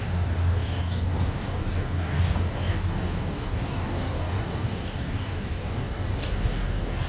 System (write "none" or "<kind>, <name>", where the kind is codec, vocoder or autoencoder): codec, DAC